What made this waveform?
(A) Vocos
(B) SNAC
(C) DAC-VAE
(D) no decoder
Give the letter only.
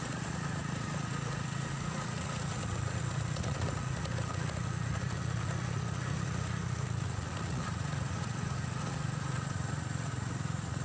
A